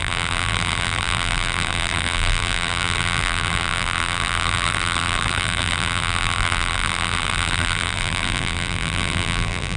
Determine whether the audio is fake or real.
fake